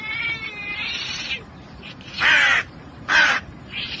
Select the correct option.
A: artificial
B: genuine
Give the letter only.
A